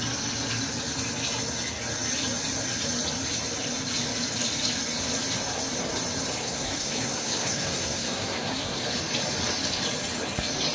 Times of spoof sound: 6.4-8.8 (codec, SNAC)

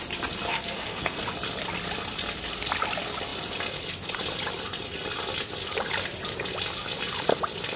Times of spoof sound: 0.5-1.2 (codec, SNAC)